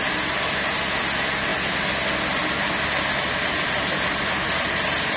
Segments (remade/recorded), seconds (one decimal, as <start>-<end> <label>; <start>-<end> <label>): 0.0-5.2 recorded

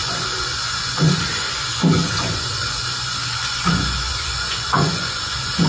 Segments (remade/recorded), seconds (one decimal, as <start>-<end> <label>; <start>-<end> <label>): 0.0-5.7 remade

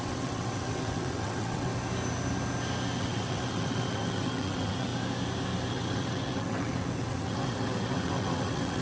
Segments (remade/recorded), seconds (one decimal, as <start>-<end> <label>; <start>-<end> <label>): 0.0-1.7 remade; 1.7-3.0 recorded; 3.0-4.9 remade; 4.9-5.7 recorded; 5.7-8.8 remade

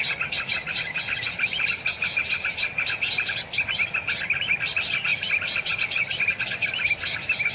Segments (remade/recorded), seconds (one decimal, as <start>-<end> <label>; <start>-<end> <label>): 0.0-7.5 recorded